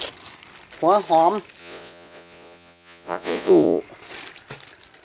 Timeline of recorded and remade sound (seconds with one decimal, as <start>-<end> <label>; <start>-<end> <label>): 0.0-1.6 recorded; 1.6-3.8 remade; 3.8-5.0 recorded